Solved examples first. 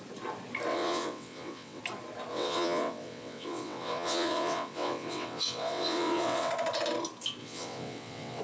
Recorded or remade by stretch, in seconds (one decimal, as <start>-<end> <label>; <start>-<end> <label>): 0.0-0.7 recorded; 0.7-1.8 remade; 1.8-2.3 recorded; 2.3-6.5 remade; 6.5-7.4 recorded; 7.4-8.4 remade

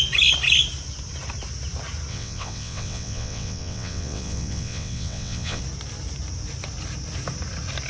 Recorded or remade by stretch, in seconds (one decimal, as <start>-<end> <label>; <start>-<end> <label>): 0.0-2.1 recorded; 2.1-5.6 remade; 5.6-7.9 recorded

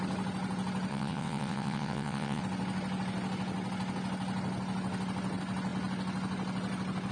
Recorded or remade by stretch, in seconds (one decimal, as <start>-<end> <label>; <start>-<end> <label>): 0.0-0.9 recorded; 0.9-2.4 remade; 2.4-7.1 recorded

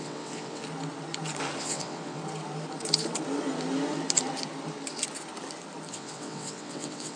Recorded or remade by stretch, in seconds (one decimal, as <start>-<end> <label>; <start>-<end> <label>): 0.0-0.6 remade; 0.6-1.6 recorded; 1.6-2.2 remade; 2.2-5.9 recorded; 5.9-7.2 remade

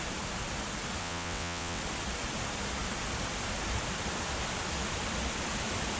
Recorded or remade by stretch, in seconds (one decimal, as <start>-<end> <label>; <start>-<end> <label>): 0.0-1.0 recorded; 1.0-1.8 remade; 1.8-6.0 recorded

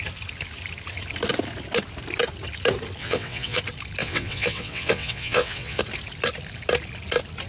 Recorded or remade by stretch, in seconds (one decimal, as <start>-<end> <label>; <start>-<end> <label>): 0.0-3.0 recorded; 3.0-3.6 remade; 3.6-4.0 recorded; 4.0-5.8 remade; 5.8-7.5 recorded

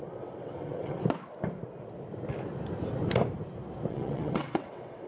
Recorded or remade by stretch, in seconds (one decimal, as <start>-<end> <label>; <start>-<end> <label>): 0.0-1.0 remade; 1.0-3.9 recorded; 3.9-5.1 remade